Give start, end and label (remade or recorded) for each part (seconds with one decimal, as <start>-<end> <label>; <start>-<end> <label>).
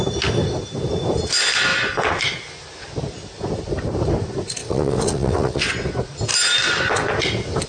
0.0-4.6 recorded; 4.6-5.7 remade; 5.7-7.7 recorded